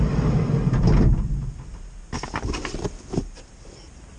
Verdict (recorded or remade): recorded